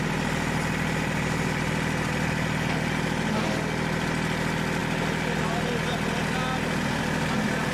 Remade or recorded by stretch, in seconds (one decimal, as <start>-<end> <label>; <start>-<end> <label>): 0.0-7.7 recorded